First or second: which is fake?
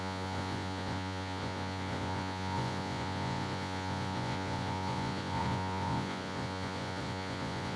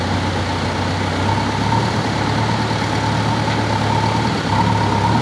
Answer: first